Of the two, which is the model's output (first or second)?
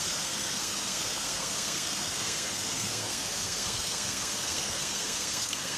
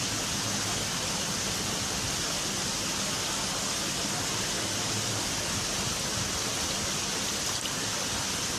first